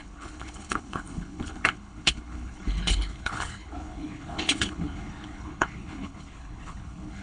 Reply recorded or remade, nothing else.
remade